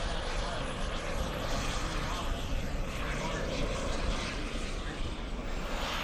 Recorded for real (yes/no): yes